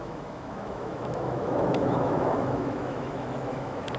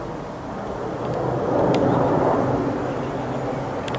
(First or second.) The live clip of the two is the second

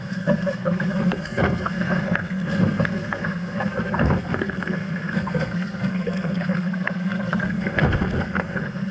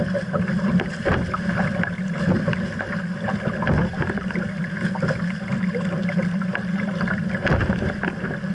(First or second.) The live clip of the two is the second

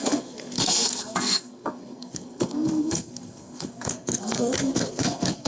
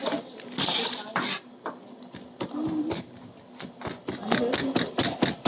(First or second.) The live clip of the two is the second